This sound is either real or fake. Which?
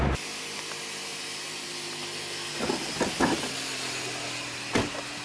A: real